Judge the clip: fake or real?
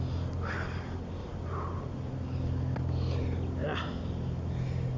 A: real